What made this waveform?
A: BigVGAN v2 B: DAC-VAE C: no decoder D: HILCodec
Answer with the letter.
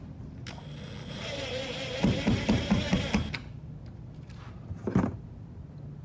C